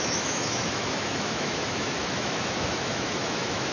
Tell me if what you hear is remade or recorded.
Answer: remade